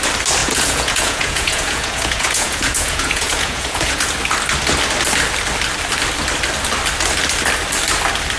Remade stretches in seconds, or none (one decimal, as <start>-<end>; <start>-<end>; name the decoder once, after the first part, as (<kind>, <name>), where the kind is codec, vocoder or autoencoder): 0.4-4.0 (vocoder, Vocos)